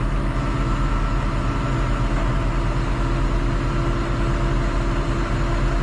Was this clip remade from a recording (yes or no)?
no